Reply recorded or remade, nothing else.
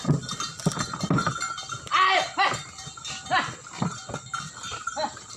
recorded